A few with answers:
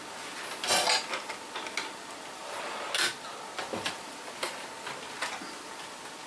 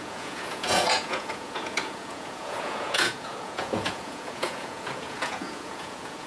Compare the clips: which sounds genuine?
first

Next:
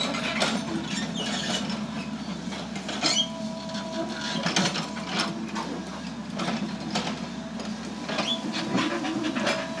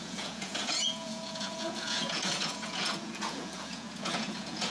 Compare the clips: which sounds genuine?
first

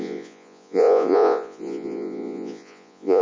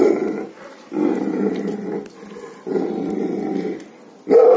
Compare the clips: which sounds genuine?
second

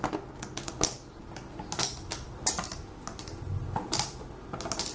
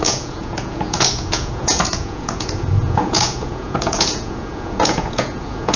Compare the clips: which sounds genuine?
first